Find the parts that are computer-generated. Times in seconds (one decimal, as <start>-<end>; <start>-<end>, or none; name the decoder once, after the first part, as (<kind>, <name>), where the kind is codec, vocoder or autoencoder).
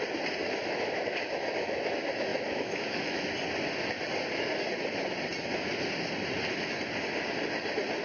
0.4-1.9 (autoencoder, DAC-VAE); 2.3-3.3